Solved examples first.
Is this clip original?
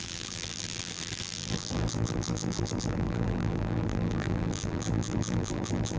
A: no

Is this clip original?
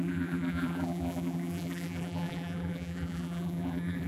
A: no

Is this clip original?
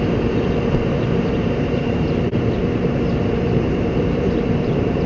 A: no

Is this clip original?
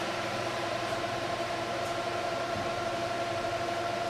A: no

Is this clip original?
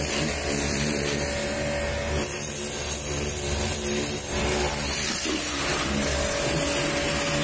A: yes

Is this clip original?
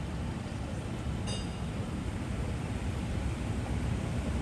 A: no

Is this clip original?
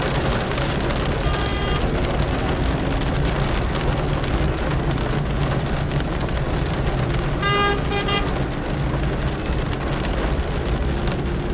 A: yes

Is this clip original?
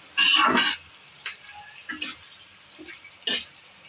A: yes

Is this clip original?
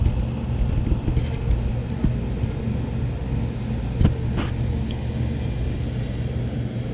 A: yes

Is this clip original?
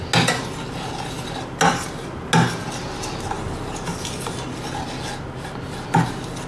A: yes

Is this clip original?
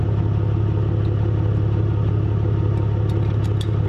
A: yes